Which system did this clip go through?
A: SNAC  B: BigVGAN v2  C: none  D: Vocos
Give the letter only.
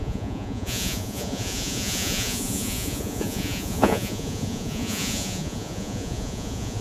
D